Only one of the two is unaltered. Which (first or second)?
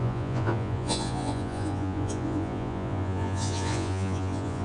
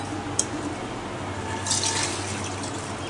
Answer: second